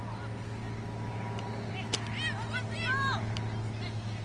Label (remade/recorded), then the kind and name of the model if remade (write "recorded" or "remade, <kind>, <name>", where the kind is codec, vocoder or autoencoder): recorded